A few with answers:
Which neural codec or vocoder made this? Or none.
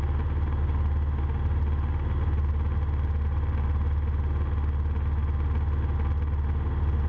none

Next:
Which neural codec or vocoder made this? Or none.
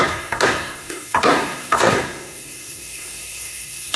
codec, SNAC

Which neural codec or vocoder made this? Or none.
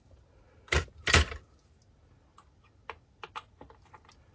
none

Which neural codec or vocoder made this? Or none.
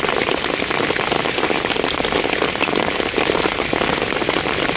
none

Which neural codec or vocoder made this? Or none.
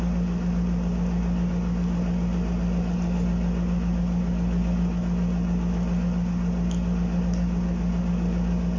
none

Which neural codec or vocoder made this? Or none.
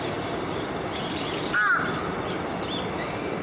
none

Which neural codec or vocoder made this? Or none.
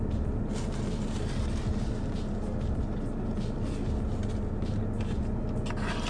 none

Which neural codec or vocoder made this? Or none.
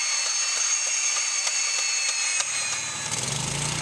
none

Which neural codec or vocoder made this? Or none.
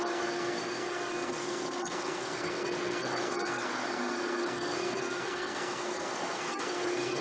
codec, SNAC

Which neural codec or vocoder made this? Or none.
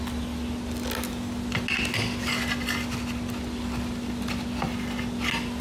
none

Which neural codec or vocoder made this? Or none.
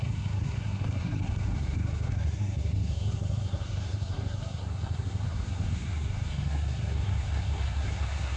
codec, SNAC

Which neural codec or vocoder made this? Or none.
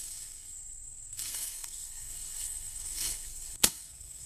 codec, SNAC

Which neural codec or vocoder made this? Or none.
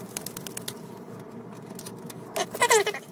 none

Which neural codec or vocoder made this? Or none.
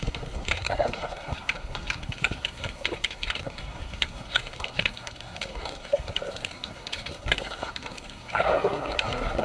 codec, SNAC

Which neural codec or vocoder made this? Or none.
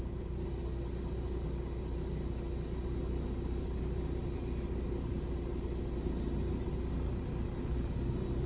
none